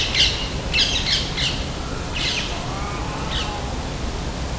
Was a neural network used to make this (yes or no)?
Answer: no